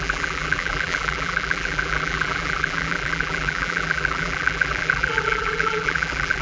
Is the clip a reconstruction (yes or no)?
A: yes